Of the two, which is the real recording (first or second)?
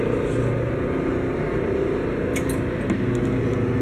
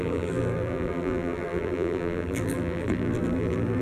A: first